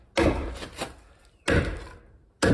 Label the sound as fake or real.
real